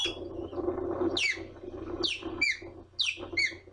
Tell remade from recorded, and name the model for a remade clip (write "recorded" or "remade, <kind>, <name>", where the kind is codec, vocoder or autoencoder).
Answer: recorded